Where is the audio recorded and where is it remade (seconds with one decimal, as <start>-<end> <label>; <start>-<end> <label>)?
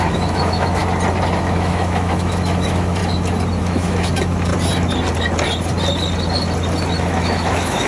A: 0.0-0.8 remade; 0.8-1.4 recorded; 1.4-3.0 remade; 3.0-3.6 recorded; 3.6-4.5 remade; 4.5-7.0 recorded; 7.0-7.9 remade